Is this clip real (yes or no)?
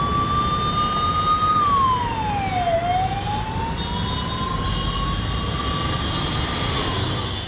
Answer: yes